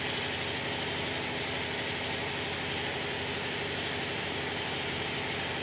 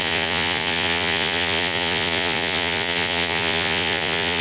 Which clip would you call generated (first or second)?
second